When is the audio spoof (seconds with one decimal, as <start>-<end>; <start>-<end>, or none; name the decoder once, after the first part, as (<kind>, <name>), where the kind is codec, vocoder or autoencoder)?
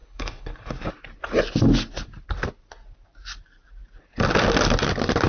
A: 0.0-0.9 (codec, HILCodec)